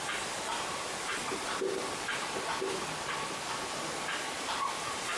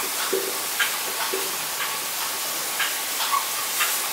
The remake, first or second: first